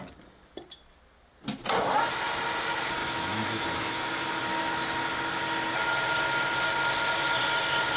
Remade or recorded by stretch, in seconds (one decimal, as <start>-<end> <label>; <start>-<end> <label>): 0.0-3.0 recorded; 3.0-4.0 remade; 4.0-8.0 recorded